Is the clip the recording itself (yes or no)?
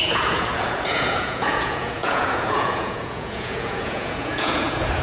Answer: no